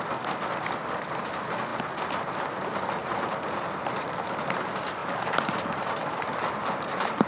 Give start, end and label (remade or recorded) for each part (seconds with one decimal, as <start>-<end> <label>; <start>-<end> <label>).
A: 0.0-3.0 recorded; 3.0-4.1 remade; 4.1-5.0 recorded; 5.0-7.3 remade